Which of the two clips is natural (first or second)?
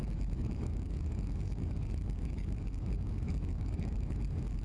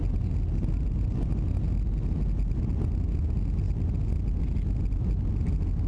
second